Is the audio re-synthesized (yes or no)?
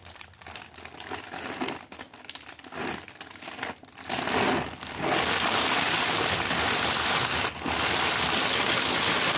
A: no